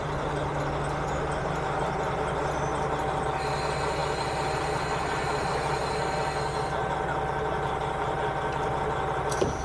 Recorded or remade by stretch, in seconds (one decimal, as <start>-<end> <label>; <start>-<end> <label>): 0.0-9.6 recorded